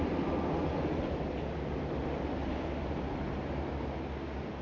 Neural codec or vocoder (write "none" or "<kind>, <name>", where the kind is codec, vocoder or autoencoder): none